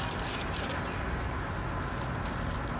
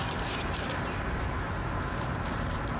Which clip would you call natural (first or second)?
first